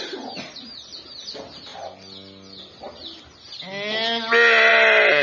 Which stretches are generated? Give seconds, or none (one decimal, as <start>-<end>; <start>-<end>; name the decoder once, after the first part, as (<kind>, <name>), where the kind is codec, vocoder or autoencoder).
none